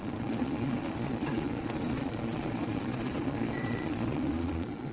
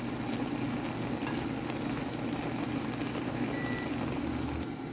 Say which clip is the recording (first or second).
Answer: second